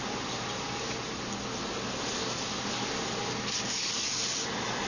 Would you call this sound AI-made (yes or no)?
no